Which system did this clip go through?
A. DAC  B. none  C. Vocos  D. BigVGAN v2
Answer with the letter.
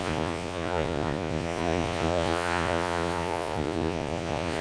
C